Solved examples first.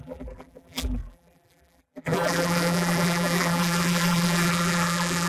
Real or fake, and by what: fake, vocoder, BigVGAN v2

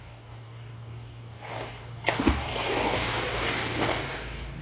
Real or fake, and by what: fake, codec, DAC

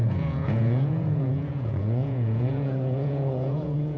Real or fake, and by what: fake, vocoder, Vocos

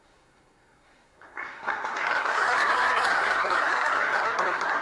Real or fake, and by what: fake, codec, SNAC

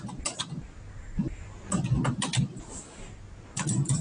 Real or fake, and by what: real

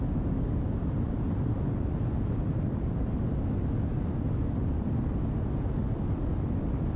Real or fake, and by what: real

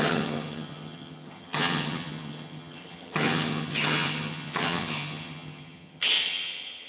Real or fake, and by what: fake, vocoder, HiFi-GAN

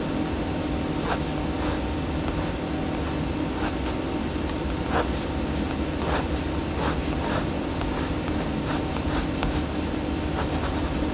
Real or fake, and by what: real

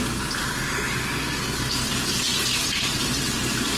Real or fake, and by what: real